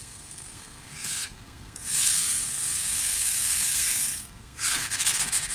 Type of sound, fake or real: fake